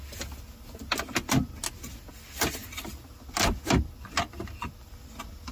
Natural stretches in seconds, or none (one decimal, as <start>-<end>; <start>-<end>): 0.0-5.5

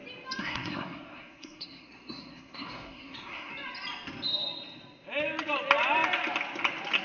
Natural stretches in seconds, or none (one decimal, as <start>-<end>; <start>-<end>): 0.0-0.4; 3.5-7.0

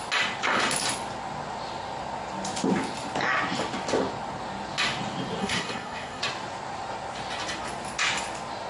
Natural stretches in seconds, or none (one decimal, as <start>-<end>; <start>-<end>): 0.0-5.4; 6.2-8.7

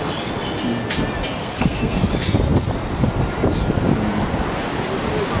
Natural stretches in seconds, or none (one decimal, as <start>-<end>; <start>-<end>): 0.0-1.4; 2.0-5.4